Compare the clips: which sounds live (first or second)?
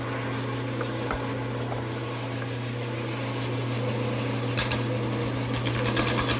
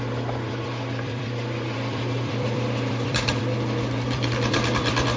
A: first